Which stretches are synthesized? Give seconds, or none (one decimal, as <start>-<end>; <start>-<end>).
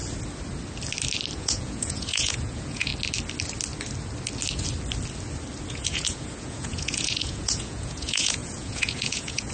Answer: 1.4-2.9; 5.7-9.5